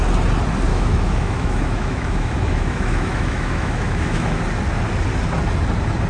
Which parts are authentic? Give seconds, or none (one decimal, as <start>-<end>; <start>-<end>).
0.0-0.7; 4.4-6.1